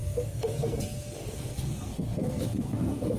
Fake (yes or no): yes